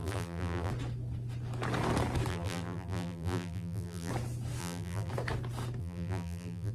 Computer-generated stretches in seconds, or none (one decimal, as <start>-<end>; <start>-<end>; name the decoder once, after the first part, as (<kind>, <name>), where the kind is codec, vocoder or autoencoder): 0.0-0.7 (vocoder, BigVGAN v2); 2.3-4.1; 4.6-5.1; 5.8-6.7